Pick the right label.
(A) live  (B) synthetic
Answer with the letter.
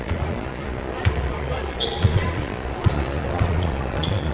B